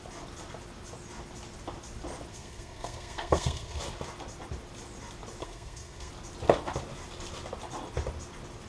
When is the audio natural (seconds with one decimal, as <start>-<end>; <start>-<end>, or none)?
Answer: 0.0-2.3; 3.8-5.4; 6.1-8.7

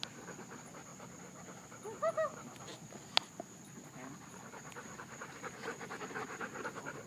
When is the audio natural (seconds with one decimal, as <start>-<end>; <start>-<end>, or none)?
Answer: 0.0-7.1

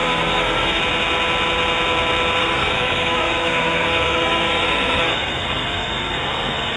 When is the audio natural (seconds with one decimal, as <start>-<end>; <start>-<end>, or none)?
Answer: 0.8-2.4

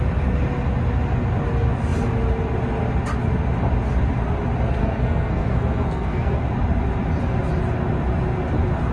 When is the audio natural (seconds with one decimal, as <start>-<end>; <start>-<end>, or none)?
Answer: 0.0-4.8; 6.4-8.9

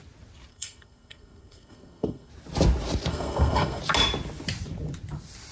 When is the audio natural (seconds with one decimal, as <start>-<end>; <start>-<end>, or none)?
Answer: 0.0-0.5; 2.3-3.1; 3.8-5.5

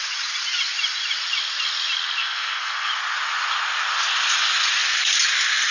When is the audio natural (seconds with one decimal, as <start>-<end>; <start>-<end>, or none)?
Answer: 0.0-2.2; 2.9-5.7